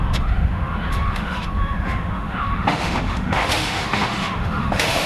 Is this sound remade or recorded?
remade